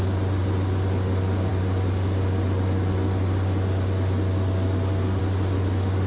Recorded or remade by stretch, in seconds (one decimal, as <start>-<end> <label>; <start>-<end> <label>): 0.0-6.1 recorded